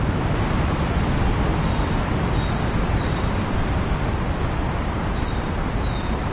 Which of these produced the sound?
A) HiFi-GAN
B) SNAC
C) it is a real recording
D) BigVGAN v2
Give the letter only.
C